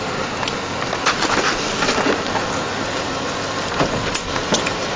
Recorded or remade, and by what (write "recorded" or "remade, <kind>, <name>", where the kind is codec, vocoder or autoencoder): recorded